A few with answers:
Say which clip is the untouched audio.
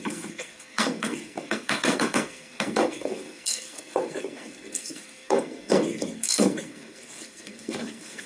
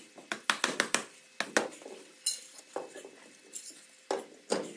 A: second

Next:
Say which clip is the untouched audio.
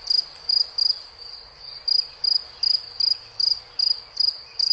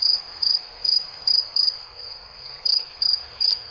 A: first